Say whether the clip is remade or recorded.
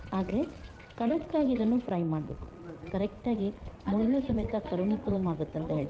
remade